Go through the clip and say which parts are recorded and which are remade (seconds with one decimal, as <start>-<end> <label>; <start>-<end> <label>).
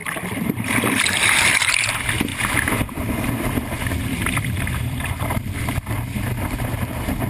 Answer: 0.0-0.8 remade; 0.8-2.3 recorded; 2.3-5.9 remade; 5.9-7.3 recorded